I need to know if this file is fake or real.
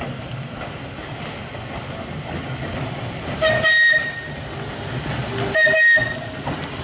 real